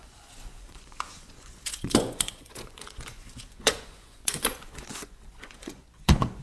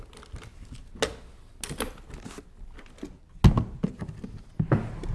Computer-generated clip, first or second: first